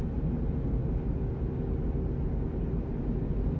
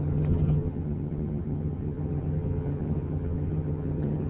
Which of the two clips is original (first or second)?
first